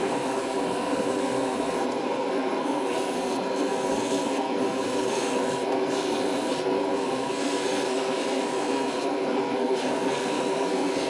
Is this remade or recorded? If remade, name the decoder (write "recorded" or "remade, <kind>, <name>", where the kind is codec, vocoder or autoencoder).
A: remade, codec, SNAC